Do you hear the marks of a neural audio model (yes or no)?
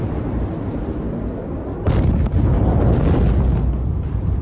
no